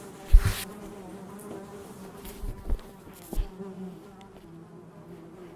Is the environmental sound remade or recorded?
recorded